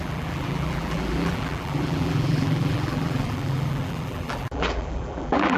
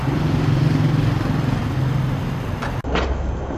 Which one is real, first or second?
second